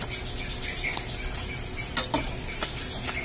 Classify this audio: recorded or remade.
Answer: recorded